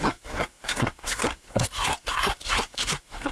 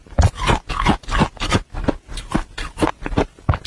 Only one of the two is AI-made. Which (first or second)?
first